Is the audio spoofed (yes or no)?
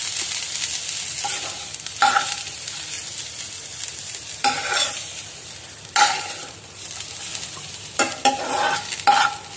no